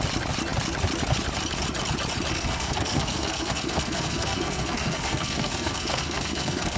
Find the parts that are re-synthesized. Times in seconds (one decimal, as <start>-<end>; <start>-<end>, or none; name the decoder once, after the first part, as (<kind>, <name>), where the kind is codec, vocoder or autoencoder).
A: 2.3-6.8 (codec, SNAC)